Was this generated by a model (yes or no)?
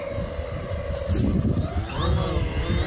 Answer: no